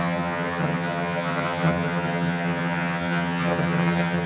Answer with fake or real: fake